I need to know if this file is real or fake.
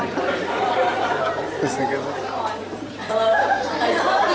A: fake